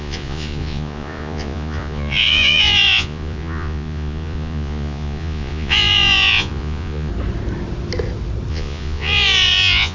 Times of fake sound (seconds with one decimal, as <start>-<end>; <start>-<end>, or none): 0.0-7.1; 8.5-9.9